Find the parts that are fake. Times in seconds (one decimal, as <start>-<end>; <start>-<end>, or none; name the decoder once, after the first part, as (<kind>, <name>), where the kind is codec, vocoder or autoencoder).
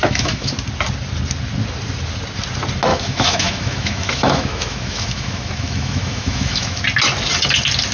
0.0-0.5 (autoencoder, DAC-VAE); 2.9-6.8